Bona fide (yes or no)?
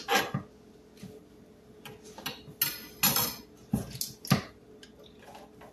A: yes